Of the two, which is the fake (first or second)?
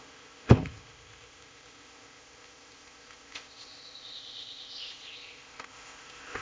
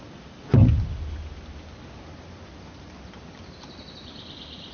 first